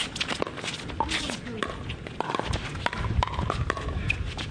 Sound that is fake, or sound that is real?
real